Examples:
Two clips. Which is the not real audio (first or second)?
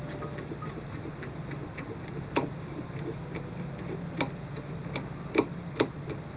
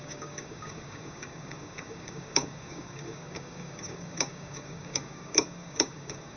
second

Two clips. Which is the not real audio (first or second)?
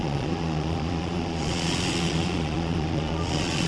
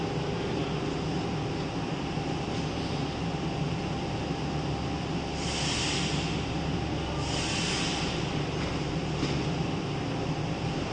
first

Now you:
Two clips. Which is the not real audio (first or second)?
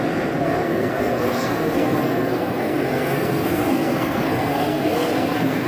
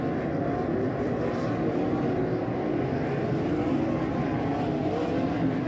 first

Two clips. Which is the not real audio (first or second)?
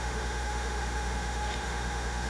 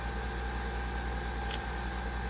first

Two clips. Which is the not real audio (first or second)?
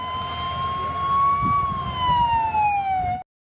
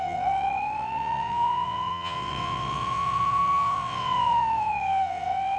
second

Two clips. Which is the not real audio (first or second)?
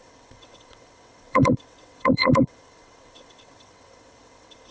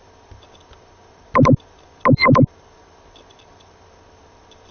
first